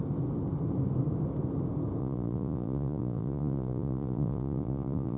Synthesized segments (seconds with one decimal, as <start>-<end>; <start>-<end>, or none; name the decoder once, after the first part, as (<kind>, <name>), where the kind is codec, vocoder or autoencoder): 2.0-5.2 (vocoder, Vocos)